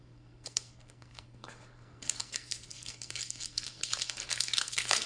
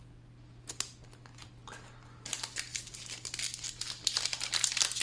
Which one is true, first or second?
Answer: second